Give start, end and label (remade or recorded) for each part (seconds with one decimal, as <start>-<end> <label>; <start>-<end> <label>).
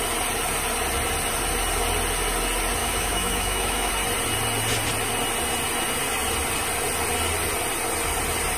0.0-2.8 recorded; 2.8-3.9 remade; 3.9-8.6 recorded